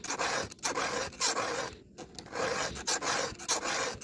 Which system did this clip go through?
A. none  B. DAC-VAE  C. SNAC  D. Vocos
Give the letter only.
A